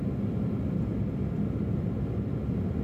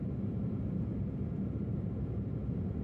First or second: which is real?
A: first